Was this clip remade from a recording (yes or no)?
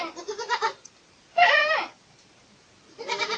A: no